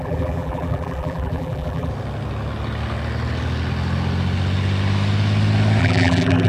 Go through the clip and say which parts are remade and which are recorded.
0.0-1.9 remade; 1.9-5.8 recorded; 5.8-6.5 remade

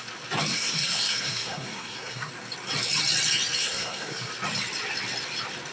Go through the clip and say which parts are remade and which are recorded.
0.0-0.5 recorded; 0.5-2.3 remade; 2.3-3.6 recorded; 3.6-4.3 remade; 4.3-5.7 recorded

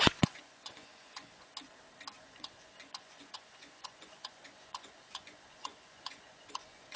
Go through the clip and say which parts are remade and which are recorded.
0.0-1.5 remade; 1.5-2.2 recorded; 2.2-7.0 remade

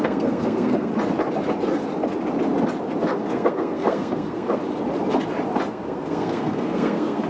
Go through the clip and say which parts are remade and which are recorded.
0.0-0.9 remade; 0.9-3.2 recorded; 3.2-4.6 remade; 4.6-5.7 recorded; 5.7-7.3 remade

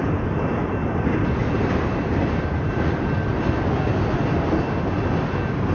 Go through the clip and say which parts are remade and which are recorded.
0.0-3.3 remade; 3.3-5.7 recorded